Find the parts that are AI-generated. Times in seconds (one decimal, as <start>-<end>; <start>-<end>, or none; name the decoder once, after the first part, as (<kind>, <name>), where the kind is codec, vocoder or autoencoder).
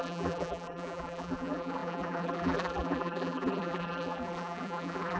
0.0-5.2 (vocoder, BigVGAN v2)